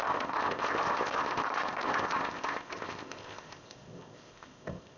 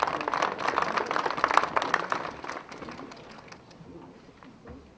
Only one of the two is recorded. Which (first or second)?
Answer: second